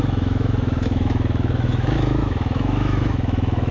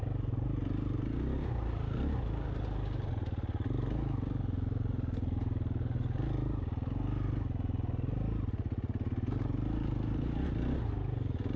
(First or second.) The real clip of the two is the second